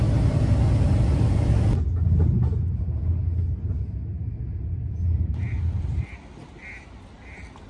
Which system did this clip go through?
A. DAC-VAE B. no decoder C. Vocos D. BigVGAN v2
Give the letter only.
B